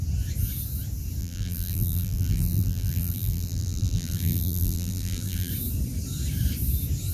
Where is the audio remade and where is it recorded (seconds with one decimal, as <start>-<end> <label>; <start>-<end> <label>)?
0.0-1.2 recorded; 1.2-5.5 remade; 5.5-7.1 recorded